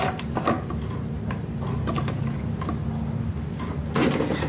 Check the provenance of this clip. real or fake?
real